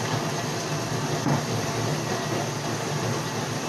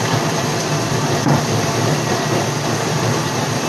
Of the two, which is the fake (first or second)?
second